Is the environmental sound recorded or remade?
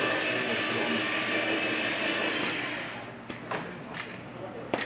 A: recorded